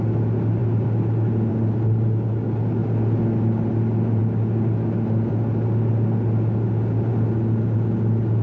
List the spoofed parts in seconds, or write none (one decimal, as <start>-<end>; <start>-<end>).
none